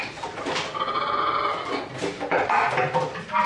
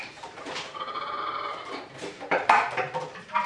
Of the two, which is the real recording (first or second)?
first